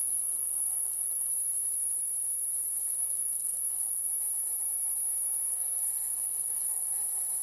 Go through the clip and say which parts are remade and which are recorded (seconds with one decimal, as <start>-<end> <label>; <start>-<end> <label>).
0.0-1.3 remade; 1.3-2.9 recorded; 2.9-4.1 remade; 4.1-5.5 recorded; 5.5-7.0 remade; 7.0-7.4 recorded